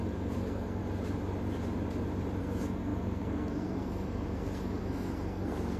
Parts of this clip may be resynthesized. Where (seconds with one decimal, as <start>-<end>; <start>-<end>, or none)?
0.0-0.8; 2.4-5.8